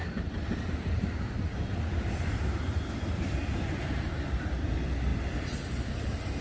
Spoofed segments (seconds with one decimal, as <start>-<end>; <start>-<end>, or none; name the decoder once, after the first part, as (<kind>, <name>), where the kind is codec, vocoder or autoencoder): 0.0-3.8 (vocoder, BigVGAN v2); 5.1-5.9